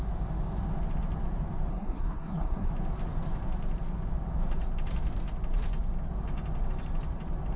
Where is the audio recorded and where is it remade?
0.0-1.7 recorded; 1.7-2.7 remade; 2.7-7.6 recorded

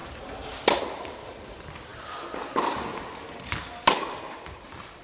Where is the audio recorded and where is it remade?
0.0-1.4 recorded; 1.4-1.9 remade; 1.9-4.5 recorded; 4.5-5.0 remade

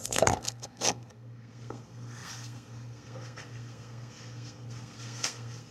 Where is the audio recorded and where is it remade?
0.0-5.7 remade

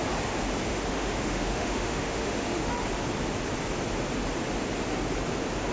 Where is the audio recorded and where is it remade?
0.0-0.7 recorded; 0.7-2.7 remade; 2.7-5.7 recorded